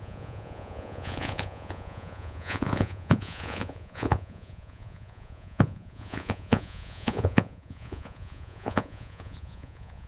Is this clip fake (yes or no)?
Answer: yes